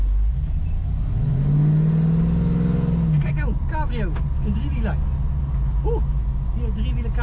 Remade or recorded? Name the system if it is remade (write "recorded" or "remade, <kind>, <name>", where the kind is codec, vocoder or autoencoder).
recorded